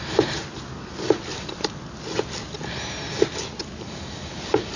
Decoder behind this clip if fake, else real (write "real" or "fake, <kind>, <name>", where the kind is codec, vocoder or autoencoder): real